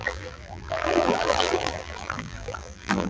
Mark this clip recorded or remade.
remade